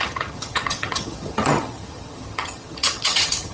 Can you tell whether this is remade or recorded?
remade